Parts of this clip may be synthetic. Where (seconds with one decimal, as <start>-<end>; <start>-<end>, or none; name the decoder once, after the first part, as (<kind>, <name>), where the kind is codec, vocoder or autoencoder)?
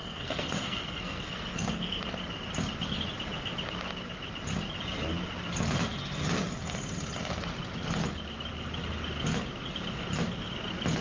0.0-2.0 (codec, SNAC)